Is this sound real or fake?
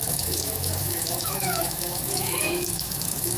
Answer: fake